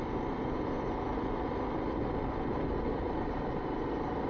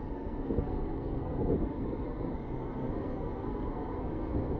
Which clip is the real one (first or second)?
first